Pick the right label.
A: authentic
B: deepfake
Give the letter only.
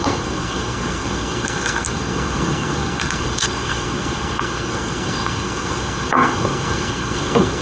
B